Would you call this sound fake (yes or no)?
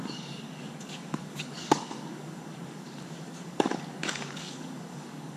yes